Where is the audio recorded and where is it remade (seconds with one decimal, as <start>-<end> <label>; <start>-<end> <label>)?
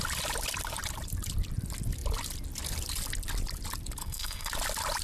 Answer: 0.0-4.0 recorded; 4.0-4.5 remade; 4.5-5.0 recorded